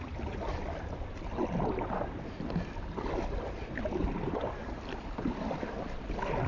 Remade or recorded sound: recorded